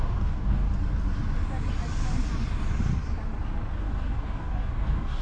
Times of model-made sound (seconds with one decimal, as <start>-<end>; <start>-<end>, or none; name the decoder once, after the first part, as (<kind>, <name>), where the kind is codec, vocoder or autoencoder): 0.0-0.7 (codec, DAC); 3.8-5.2